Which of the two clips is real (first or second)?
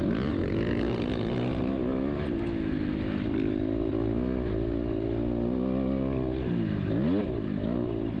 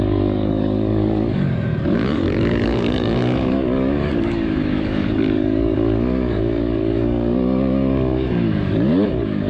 first